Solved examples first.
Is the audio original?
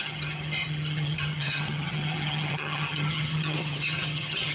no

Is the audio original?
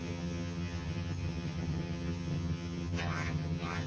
no